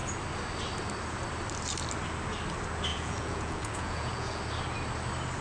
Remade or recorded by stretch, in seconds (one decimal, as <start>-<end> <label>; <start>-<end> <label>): 0.0-2.9 recorded; 2.9-4.4 remade; 4.4-5.4 recorded